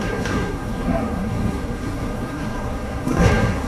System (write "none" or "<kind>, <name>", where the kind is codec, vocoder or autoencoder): codec, SNAC